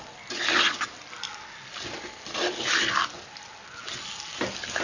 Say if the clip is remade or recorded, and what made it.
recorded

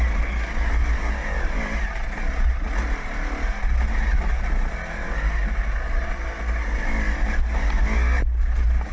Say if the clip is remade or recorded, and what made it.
recorded